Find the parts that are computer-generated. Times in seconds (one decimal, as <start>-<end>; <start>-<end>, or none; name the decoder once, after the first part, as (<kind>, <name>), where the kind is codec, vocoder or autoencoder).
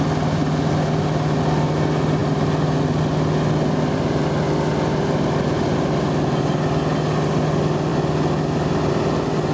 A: none